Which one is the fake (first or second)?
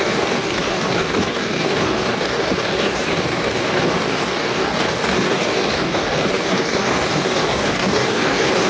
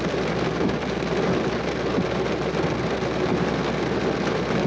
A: first